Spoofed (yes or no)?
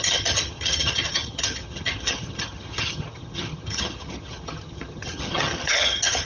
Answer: yes